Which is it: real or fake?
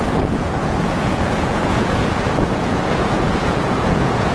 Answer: fake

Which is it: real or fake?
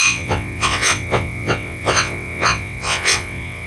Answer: fake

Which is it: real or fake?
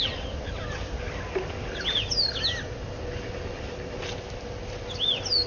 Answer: real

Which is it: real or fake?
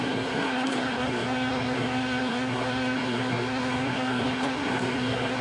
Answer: fake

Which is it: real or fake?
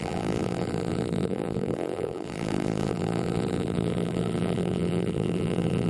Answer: fake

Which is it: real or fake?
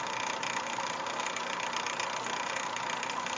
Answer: real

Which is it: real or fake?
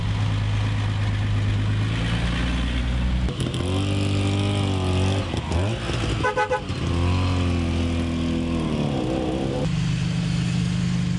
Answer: real